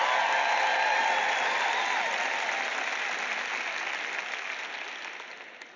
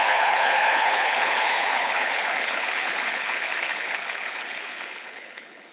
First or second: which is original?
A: first